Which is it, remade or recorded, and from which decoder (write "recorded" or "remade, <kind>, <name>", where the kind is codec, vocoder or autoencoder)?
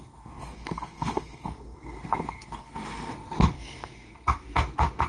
remade, codec, SNAC